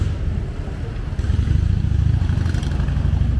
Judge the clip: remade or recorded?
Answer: recorded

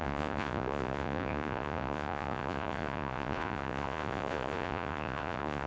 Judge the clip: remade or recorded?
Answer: remade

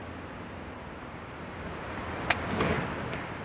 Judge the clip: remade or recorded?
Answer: recorded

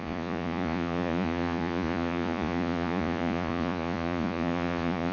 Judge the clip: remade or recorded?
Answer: remade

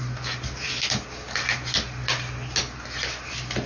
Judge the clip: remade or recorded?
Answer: recorded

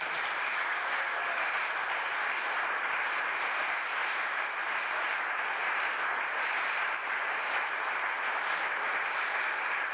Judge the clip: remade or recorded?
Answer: recorded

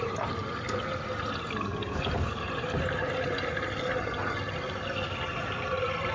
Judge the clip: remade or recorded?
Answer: recorded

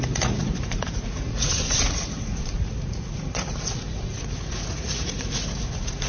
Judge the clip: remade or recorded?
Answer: remade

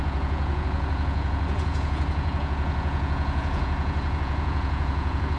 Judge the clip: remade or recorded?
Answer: remade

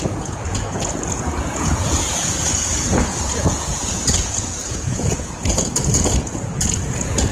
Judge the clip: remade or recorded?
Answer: remade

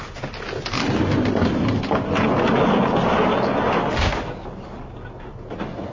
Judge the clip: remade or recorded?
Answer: recorded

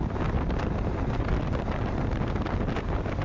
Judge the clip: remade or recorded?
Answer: recorded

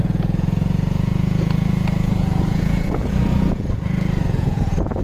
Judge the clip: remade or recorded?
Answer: remade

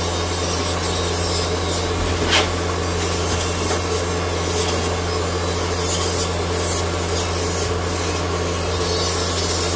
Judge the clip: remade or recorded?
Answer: recorded